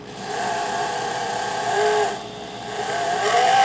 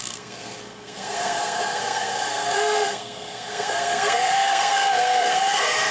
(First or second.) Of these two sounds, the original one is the first